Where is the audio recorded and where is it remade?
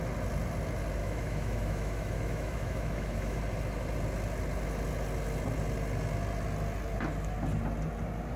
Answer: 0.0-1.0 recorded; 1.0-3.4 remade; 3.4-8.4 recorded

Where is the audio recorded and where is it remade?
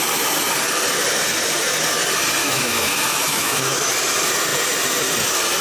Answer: 0.0-2.4 recorded; 2.4-3.9 remade; 3.9-5.6 recorded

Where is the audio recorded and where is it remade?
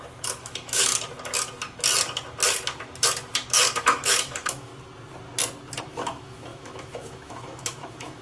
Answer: 0.0-0.9 remade; 0.9-3.8 recorded; 3.8-4.7 remade; 4.7-5.8 recorded; 5.8-8.2 remade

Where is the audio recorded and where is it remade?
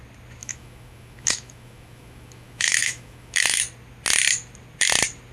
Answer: 0.0-0.4 recorded; 0.4-3.6 remade; 3.6-5.3 recorded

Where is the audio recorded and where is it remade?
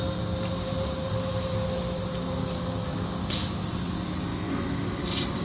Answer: 0.0-4.3 recorded; 4.3-5.0 remade; 5.0-5.4 recorded